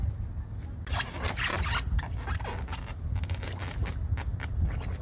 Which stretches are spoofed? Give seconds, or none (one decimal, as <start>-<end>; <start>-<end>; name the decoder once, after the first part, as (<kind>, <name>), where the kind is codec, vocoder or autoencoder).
none